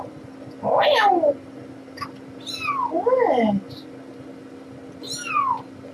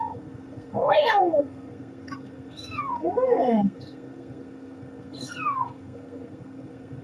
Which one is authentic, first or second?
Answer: first